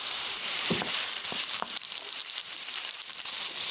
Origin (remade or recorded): remade